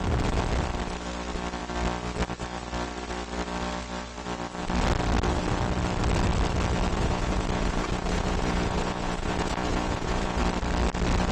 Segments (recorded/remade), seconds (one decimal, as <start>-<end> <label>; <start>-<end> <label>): 0.0-6.9 recorded; 6.9-10.4 remade; 10.4-11.3 recorded